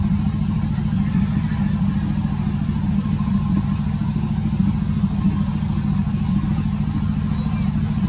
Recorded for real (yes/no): yes